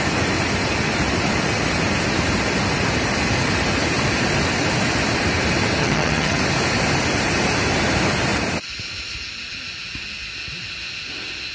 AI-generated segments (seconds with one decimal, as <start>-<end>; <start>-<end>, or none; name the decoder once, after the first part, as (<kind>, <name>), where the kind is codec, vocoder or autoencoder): 5.8-6.4 (vocoder, HiFi-GAN)